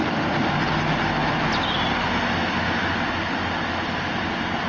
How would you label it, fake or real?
real